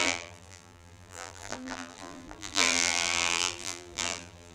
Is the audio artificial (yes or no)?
yes